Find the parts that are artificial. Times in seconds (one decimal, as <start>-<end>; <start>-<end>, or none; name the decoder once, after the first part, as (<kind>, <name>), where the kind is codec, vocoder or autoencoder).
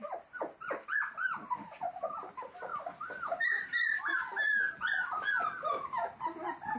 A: 2.7-4.0 (vocoder, BigVGAN v2)